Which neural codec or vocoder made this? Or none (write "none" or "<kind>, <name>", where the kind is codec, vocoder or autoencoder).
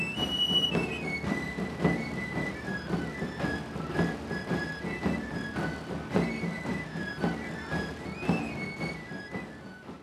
none